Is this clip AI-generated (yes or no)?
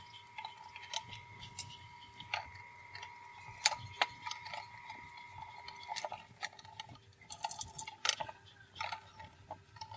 no